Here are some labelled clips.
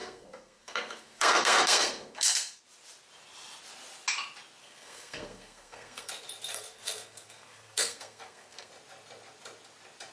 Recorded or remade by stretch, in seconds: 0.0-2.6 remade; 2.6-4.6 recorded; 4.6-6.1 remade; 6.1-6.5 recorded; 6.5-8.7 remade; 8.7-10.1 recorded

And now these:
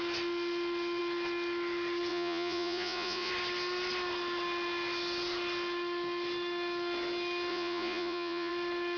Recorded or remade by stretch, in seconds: 0.0-2.1 recorded; 2.1-3.3 remade; 3.3-7.5 recorded; 7.5-8.5 remade; 8.5-9.0 recorded

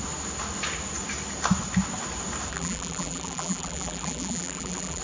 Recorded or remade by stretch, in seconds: 0.0-2.5 recorded; 2.5-5.0 remade